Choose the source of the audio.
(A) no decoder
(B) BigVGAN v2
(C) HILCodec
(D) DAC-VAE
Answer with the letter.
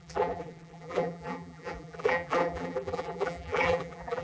B